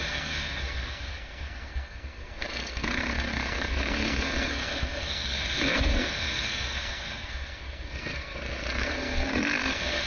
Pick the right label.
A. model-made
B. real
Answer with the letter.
A